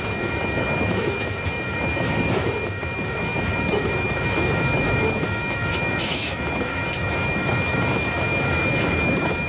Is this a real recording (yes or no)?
no